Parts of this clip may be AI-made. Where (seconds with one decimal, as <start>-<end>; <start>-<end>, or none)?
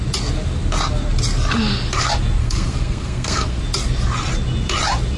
2.4-3.6